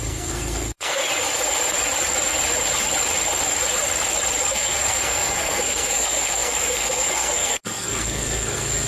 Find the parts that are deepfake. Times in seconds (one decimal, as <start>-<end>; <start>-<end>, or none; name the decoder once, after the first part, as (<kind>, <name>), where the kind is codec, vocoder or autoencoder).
0.0-1.0 (codec, SNAC); 4.4-8.9